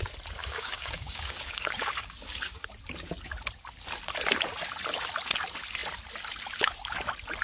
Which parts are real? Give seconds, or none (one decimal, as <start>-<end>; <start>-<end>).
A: 0.0-0.4; 2.7-7.4